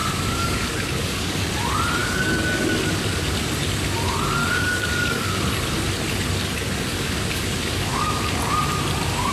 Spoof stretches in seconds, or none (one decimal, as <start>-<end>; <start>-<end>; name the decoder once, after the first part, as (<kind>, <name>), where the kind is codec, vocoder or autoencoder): 0.0-1.5 (codec, DAC); 2.0-3.2; 4.4-5.4; 6.9-8.2